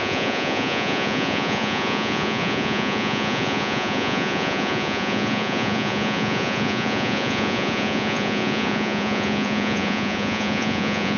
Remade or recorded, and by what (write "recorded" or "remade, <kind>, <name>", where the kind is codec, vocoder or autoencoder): remade, vocoder, Vocos